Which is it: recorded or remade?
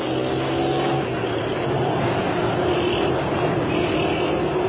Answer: recorded